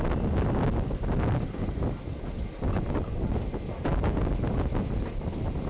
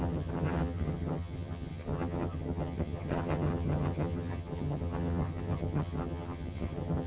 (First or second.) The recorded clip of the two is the first